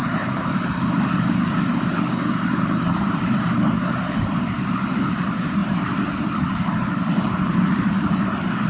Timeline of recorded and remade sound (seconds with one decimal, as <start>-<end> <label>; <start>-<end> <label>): 0.0-8.7 remade